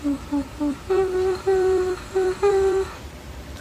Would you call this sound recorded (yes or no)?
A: no